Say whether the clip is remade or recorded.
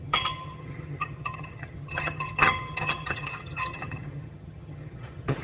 remade